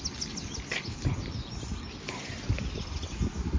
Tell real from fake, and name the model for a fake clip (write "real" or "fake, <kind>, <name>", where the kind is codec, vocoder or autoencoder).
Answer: real